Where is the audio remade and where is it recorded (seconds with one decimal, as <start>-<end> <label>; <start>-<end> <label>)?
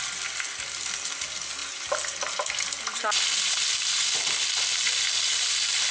0.0-5.9 recorded